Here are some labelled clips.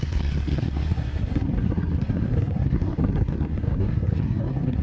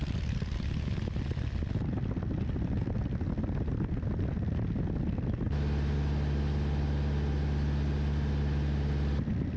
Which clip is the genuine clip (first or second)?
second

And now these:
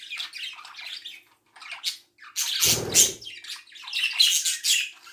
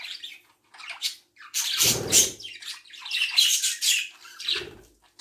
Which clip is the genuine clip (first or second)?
first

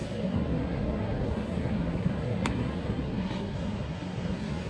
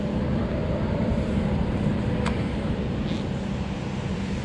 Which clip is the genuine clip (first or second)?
second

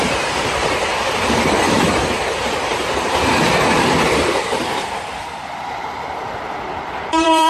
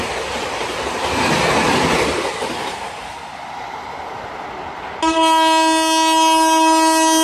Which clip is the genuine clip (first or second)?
second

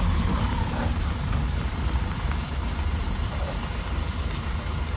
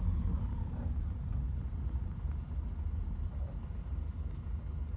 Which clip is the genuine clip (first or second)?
second